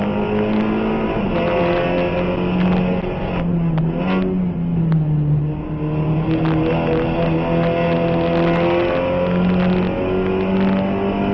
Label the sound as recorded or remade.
recorded